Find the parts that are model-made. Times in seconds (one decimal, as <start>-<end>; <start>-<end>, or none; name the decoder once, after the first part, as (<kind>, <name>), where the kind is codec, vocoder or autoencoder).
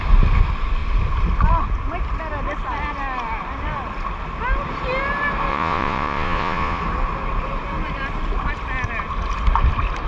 5.5-6.8 (vocoder, Vocos)